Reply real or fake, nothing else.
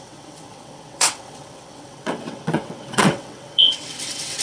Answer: fake